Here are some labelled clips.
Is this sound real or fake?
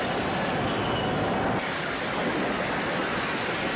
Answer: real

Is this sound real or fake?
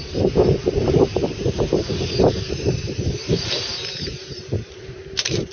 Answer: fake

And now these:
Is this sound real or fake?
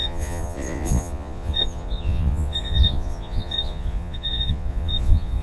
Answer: fake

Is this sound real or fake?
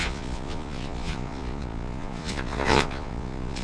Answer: fake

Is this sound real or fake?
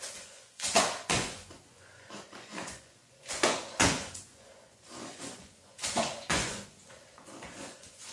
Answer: fake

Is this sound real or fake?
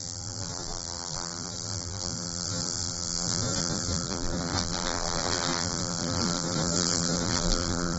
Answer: fake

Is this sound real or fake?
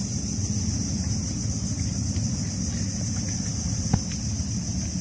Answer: real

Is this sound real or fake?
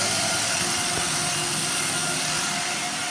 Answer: real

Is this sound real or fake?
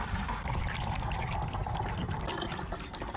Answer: fake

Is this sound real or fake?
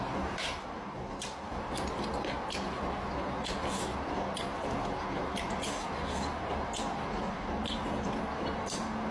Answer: real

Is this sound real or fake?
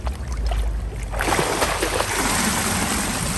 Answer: real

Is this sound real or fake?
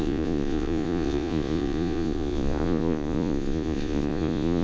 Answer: fake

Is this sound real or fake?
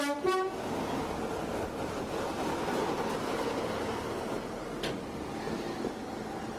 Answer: real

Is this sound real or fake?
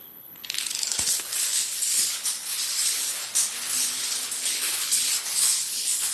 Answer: fake